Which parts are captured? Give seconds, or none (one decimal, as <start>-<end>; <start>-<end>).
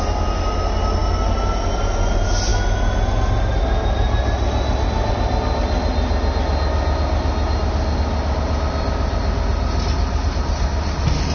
0.0-11.3